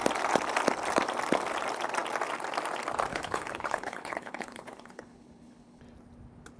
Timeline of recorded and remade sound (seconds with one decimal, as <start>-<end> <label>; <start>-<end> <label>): 0.0-3.1 recorded; 3.1-5.8 remade; 5.8-6.6 recorded